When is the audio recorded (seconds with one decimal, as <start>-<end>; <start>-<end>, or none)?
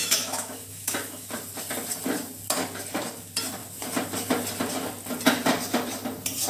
1.3-6.5